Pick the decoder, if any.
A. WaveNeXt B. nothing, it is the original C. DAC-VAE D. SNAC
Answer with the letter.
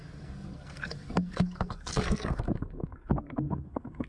D